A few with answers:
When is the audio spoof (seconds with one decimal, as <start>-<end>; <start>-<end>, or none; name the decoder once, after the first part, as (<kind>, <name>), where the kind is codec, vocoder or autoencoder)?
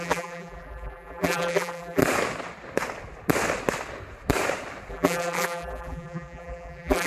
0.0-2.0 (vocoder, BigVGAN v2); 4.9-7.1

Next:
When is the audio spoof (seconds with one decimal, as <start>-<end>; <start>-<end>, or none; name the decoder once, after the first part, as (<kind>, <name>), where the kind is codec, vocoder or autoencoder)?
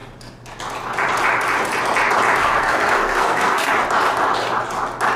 2.4-3.7 (codec, SNAC)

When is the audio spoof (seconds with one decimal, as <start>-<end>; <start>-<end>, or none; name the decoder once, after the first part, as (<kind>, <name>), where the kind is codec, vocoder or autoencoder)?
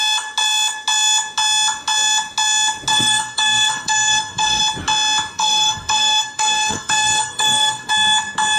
2.9-4.6 (codec, SNAC); 5.3-7.9